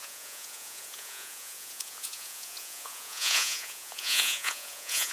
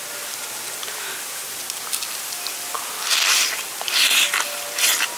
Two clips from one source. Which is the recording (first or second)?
second